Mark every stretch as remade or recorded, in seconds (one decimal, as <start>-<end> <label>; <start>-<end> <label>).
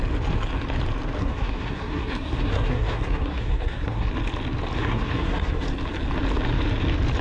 0.0-1.2 recorded; 1.2-4.1 remade; 4.1-4.8 recorded; 4.8-5.6 remade; 5.6-7.2 recorded